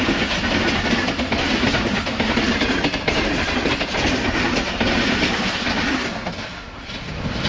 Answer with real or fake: real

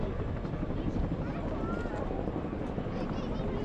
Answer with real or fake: real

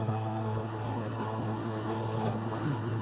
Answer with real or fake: fake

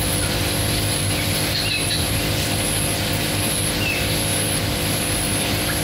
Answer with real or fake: real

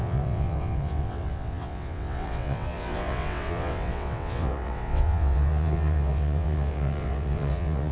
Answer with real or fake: fake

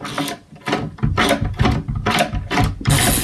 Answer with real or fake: real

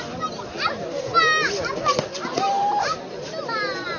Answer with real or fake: real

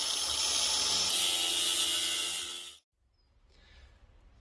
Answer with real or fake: real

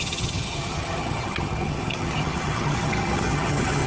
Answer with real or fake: fake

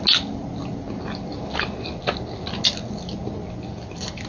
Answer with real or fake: real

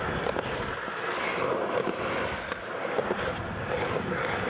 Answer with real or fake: real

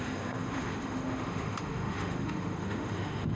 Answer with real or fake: fake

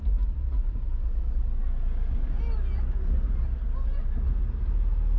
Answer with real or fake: real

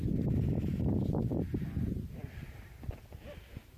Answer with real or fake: real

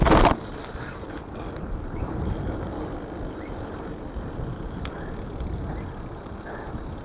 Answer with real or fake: real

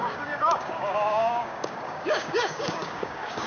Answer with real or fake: fake